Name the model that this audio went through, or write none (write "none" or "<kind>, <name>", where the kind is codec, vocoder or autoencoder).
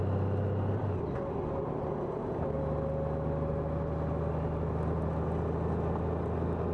none